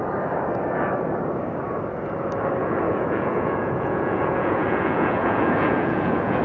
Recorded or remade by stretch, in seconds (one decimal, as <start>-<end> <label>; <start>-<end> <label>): 0.0-2.6 recorded; 2.6-6.4 remade